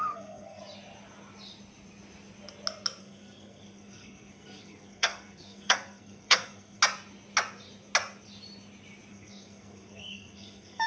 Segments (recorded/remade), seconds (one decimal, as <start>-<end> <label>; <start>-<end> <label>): 0.0-0.6 remade; 0.6-3.0 recorded; 3.0-6.8 remade; 6.8-9.1 recorded; 9.1-10.9 remade